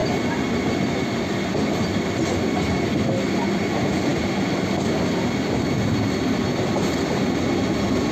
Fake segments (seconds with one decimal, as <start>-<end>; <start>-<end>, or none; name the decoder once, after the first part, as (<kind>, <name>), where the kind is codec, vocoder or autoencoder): none